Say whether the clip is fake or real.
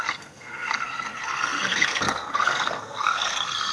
fake